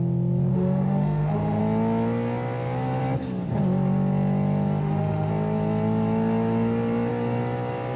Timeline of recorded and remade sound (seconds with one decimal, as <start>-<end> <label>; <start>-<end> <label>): 0.0-0.5 recorded; 0.5-1.6 remade; 1.6-4.8 recorded; 4.8-5.3 remade; 5.3-8.0 recorded